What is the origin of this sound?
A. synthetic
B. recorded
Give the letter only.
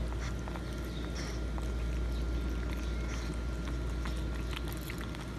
B